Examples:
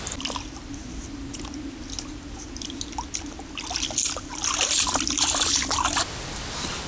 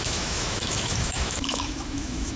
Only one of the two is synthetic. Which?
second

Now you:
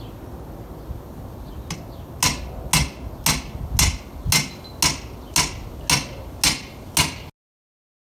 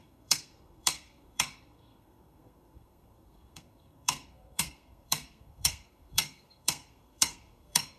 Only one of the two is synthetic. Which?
second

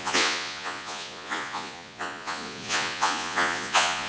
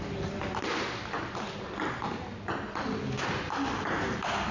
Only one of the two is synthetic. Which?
first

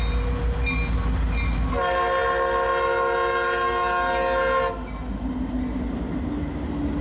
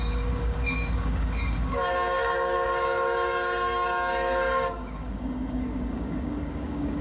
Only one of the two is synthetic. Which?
second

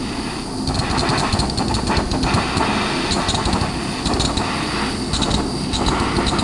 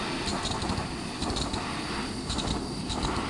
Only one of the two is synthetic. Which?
second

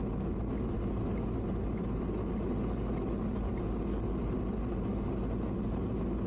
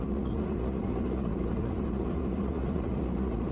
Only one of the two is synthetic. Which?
second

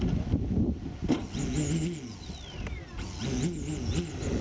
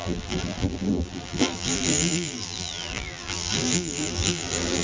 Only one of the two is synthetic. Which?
second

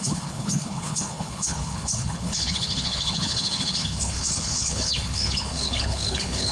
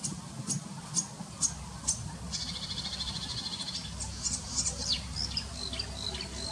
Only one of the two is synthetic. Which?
first